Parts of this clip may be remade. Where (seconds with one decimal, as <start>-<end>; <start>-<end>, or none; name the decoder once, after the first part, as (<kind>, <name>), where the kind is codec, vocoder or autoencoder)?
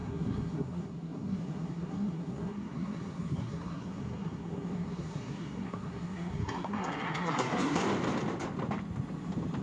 0.0-7.8 (codec, SNAC)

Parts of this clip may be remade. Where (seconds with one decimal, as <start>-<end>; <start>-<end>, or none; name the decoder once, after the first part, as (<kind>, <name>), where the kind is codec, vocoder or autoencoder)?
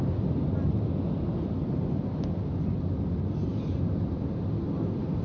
none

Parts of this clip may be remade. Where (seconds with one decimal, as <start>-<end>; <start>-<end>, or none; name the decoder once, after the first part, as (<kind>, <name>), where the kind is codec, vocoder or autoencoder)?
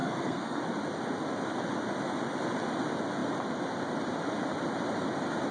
0.0-0.6 (codec, SNAC)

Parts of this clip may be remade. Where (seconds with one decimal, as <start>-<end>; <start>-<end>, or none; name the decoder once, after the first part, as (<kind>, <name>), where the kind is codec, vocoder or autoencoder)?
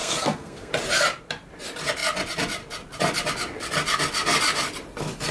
0.0-0.7 (codec, SNAC)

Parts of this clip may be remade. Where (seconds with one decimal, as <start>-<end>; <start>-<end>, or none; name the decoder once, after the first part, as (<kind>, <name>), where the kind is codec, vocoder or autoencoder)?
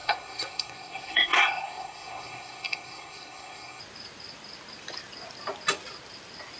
0.0-3.8 (codec, SNAC)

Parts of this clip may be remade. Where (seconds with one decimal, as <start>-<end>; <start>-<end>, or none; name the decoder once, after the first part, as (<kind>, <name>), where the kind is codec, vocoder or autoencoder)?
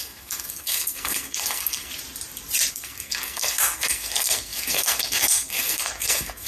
0.0-1.9 (codec, SNAC); 2.7-6.5